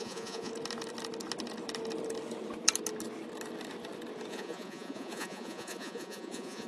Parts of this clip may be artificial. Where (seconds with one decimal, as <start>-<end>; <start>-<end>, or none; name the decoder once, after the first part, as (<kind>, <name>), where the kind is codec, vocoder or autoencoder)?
0.0-0.5 (vocoder, Vocos); 4.3-6.7